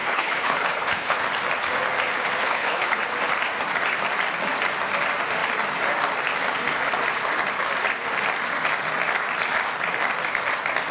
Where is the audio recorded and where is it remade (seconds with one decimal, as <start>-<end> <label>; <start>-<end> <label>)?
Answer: 0.0-1.2 remade; 1.2-2.4 recorded; 2.4-3.0 remade; 3.0-10.9 recorded